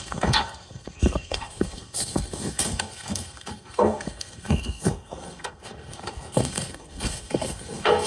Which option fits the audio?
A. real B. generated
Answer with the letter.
B